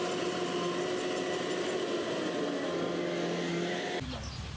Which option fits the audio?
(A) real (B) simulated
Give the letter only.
A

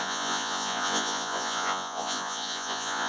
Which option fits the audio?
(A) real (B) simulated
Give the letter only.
B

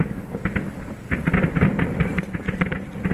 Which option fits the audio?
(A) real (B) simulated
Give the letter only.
A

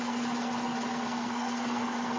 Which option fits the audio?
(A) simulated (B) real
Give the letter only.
A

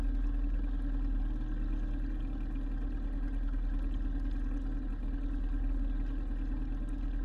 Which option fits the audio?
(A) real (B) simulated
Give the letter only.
A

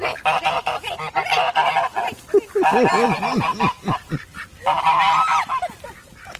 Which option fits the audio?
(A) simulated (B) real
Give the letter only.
B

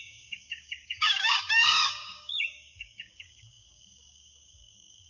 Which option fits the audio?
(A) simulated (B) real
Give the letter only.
A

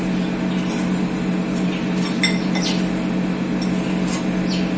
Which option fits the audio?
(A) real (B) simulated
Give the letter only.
A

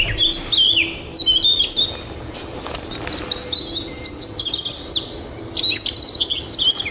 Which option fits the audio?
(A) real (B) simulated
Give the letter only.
A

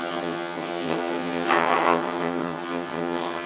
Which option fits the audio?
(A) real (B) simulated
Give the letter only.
B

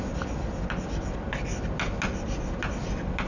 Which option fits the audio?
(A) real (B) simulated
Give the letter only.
A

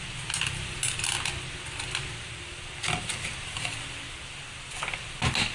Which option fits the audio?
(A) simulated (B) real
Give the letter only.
B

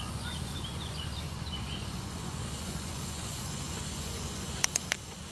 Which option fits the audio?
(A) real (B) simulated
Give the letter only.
B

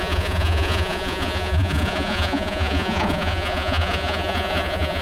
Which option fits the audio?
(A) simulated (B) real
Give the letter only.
A